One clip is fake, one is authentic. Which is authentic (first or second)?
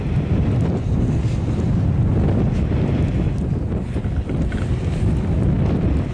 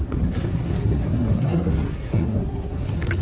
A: first